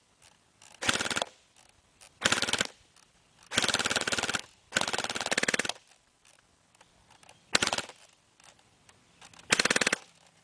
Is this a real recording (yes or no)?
yes